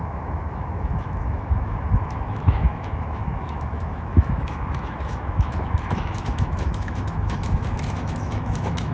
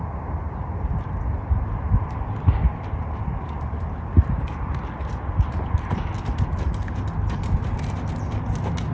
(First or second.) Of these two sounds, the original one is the second